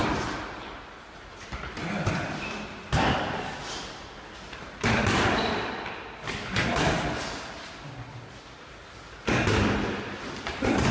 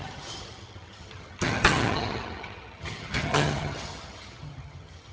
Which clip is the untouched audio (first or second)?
first